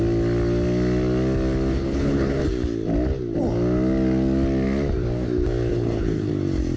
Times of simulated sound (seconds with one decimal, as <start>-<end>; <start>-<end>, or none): 1.7-2.4; 5.7-6.3